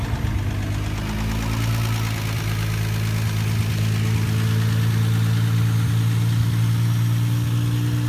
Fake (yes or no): no